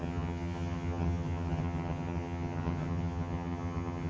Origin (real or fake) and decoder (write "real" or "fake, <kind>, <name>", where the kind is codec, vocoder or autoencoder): fake, vocoder, HiFi-GAN